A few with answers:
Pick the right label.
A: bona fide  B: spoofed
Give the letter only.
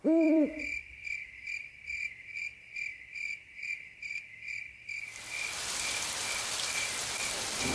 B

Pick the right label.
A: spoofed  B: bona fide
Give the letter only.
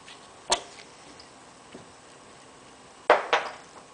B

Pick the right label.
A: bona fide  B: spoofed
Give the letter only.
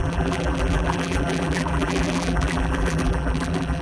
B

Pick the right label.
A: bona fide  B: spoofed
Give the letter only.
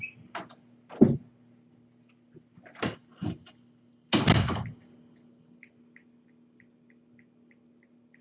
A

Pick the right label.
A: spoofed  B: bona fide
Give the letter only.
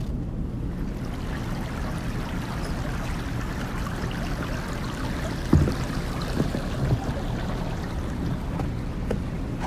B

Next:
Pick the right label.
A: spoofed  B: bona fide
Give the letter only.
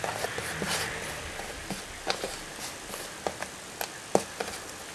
B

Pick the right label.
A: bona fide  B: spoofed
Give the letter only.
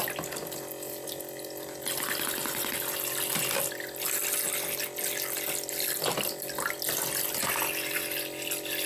A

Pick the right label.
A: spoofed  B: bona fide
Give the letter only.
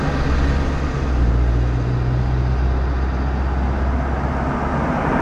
B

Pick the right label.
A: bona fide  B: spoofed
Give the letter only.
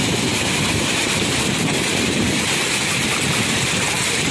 B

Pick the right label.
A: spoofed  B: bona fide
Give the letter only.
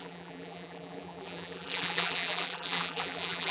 A